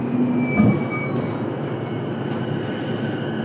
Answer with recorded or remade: recorded